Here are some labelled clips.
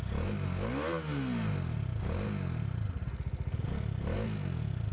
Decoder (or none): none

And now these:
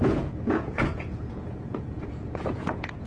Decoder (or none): vocoder, Vocos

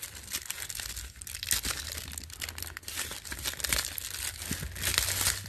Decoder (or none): none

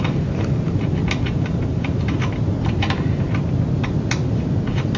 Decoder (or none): none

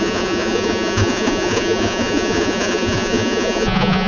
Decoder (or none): vocoder, Vocos